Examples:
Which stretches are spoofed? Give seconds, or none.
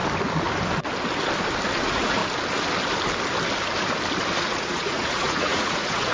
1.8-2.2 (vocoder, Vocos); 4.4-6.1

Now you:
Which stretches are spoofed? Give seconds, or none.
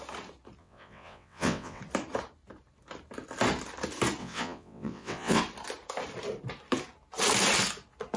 0.6-1.8 (vocoder, WaveNeXt); 4.2-5.4